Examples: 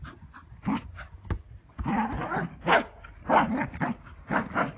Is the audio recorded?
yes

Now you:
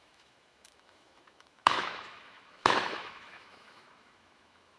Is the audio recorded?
no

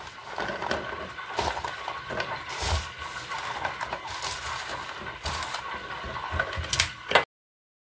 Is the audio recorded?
yes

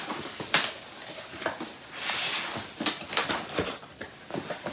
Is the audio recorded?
yes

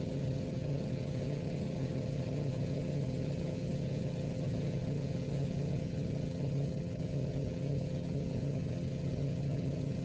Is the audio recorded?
no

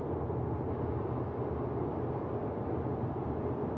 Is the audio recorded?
yes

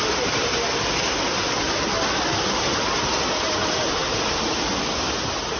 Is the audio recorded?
yes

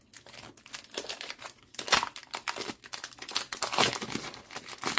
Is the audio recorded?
yes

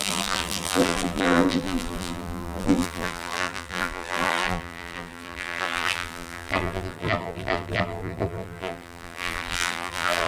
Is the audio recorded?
no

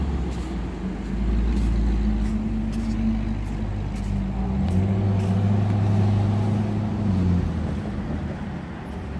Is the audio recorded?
yes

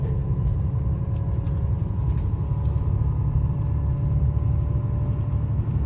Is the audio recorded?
yes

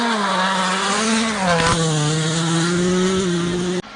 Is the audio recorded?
yes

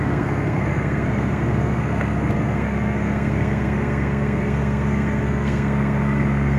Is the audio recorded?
no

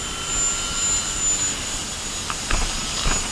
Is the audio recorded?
yes